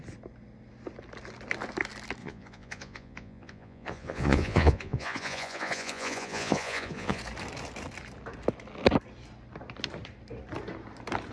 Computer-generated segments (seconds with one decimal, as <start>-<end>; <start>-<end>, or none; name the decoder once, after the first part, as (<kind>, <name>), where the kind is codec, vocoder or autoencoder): 2.2-7.2 (vocoder, Vocos)